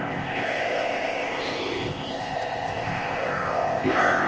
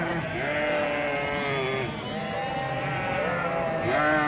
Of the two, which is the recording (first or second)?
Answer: second